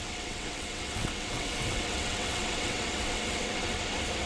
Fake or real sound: fake